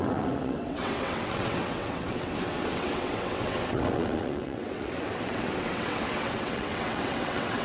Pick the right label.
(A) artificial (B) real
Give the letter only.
A